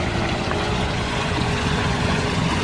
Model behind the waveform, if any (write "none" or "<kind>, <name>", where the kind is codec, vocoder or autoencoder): vocoder, Vocos